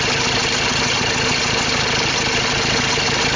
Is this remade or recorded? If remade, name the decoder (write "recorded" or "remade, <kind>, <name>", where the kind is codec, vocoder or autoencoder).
recorded